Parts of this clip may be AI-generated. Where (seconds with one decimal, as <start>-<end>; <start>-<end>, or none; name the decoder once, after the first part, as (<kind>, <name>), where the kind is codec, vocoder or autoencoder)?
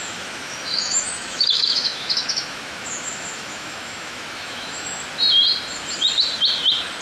0.0-5.0 (autoencoder, DAC-VAE)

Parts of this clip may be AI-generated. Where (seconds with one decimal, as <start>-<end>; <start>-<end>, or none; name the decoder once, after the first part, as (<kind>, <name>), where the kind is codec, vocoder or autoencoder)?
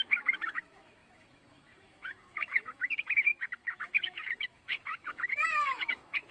0.0-6.3 (autoencoder, DAC-VAE)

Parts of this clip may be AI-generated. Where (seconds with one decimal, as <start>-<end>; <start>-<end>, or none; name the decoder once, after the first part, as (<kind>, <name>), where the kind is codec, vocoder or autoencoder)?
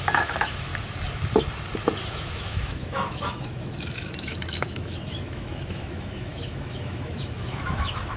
0.0-0.7 (autoencoder, DAC-VAE); 2.1-8.2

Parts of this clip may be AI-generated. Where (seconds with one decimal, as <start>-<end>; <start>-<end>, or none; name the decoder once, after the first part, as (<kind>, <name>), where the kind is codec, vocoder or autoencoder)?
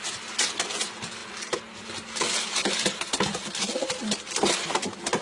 none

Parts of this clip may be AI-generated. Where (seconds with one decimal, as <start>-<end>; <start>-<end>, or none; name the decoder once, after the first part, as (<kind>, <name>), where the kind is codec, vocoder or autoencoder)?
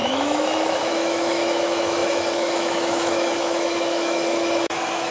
0.0-5.1 (autoencoder, DAC-VAE)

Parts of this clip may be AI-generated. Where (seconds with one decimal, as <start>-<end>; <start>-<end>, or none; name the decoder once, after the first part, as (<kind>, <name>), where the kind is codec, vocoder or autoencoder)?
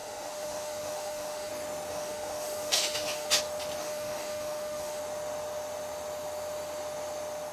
0.0-1.5 (autoencoder, DAC-VAE); 1.9-3.4; 3.8-5.0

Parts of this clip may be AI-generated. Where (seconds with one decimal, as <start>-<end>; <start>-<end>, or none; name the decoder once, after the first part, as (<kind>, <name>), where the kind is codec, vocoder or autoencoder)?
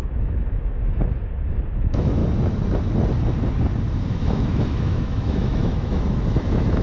0.0-0.8 (autoencoder, DAC-VAE); 1.7-2.2; 4.1-6.8